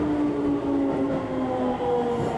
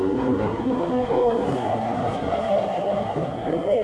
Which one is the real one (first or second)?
first